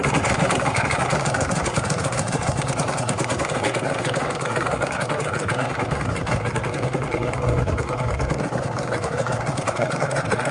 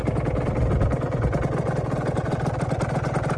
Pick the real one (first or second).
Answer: second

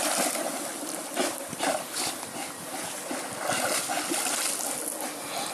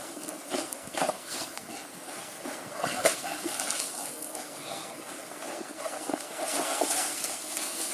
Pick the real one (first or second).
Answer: first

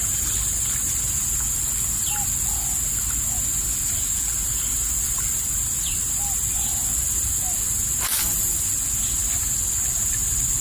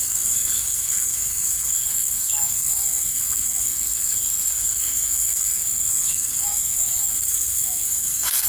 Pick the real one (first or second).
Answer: first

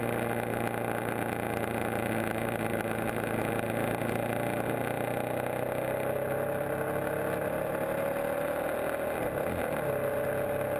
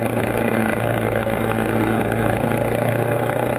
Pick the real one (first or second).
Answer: first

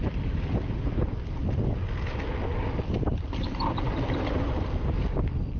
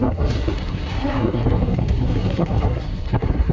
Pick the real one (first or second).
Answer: first